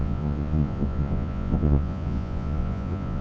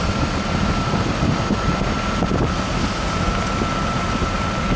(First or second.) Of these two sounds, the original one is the second